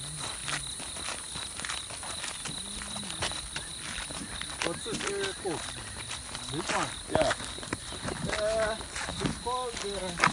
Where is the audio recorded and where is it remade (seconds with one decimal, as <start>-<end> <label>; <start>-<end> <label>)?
0.0-10.3 recorded